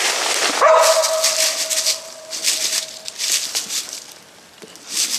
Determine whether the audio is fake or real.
real